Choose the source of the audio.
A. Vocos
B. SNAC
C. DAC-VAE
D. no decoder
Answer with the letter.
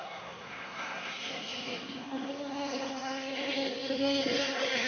B